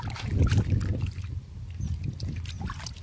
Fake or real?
real